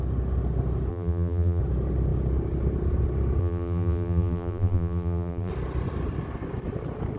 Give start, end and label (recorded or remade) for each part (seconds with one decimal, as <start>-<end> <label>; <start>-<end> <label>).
0.0-0.9 recorded; 0.9-1.6 remade; 1.6-3.4 recorded; 3.4-5.5 remade; 5.5-7.2 recorded